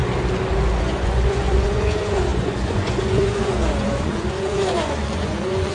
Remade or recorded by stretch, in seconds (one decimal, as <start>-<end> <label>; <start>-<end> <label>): 0.0-0.8 recorded; 0.8-5.7 remade